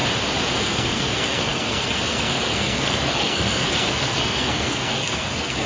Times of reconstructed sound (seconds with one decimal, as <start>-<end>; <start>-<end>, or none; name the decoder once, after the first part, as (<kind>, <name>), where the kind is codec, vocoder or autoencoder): 0.6-5.7 (codec, SNAC)